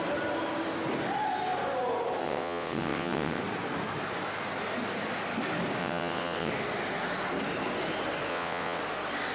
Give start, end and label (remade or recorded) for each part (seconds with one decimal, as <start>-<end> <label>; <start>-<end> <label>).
0.0-2.2 recorded; 2.2-3.4 remade; 3.4-5.8 recorded; 5.8-6.5 remade; 6.5-8.3 recorded; 8.3-8.8 remade; 8.8-9.3 recorded